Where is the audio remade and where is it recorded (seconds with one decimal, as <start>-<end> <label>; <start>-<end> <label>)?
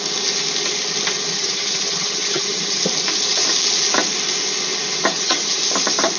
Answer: 0.0-1.3 recorded; 1.3-2.8 remade; 2.8-5.1 recorded; 5.1-5.6 remade; 5.6-6.2 recorded